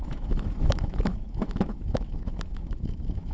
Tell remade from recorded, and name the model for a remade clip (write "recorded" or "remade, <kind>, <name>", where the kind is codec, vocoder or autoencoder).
remade, autoencoder, DAC-VAE